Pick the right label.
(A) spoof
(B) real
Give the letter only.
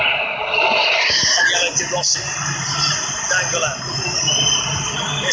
B